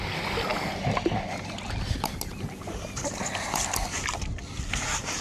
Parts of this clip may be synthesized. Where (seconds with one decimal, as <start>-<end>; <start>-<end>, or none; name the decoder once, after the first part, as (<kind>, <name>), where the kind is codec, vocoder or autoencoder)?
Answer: none